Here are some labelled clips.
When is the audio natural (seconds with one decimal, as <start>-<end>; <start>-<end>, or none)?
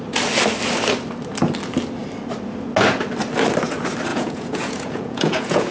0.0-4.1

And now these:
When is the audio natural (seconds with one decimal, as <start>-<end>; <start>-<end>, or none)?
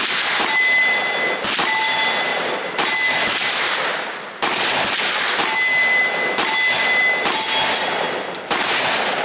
0.0-9.2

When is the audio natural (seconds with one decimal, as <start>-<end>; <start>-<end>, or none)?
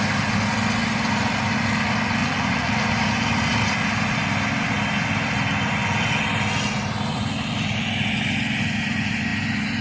0.0-2.2; 2.7-9.8